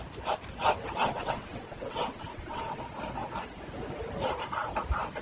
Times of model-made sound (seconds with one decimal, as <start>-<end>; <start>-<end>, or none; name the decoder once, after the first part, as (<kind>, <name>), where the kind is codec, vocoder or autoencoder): 1.0-2.8 (vocoder, WaveNeXt)